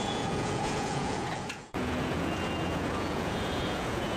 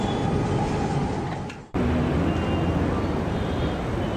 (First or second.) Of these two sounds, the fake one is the first